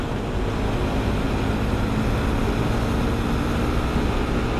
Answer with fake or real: real